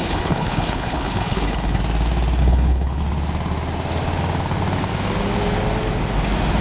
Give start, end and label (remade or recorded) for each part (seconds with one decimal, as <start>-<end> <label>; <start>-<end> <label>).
0.0-1.8 remade; 1.8-2.4 recorded; 2.4-3.0 remade; 3.0-6.6 recorded